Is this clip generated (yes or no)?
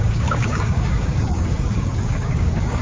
yes